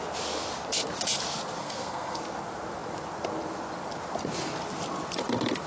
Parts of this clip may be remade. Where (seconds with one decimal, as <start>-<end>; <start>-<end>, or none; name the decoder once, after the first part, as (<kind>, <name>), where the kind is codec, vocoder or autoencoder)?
1.6-2.2 (codec, SNAC)